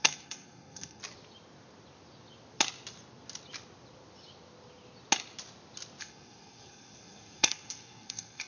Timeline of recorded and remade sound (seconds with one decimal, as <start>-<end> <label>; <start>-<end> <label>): 0.0-1.0 remade; 1.0-6.0 recorded; 6.0-8.5 remade